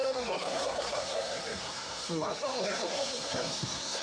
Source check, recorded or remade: remade